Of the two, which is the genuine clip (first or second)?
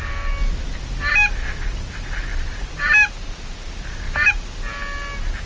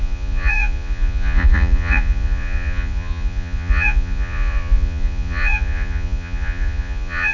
first